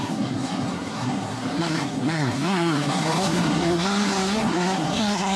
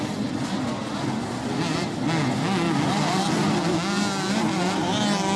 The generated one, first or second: first